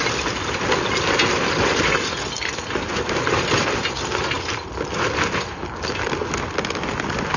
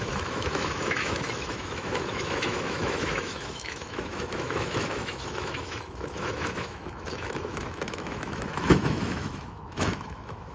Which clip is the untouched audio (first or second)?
first